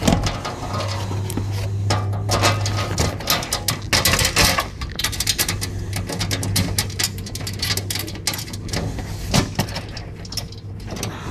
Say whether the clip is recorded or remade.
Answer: recorded